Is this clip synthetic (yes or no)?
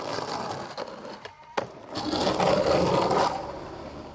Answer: no